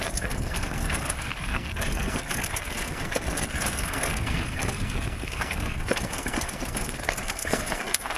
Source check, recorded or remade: remade